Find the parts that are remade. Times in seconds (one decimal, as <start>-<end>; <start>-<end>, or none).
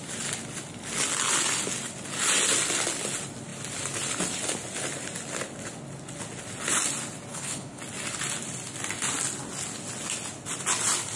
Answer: 7.3-7.8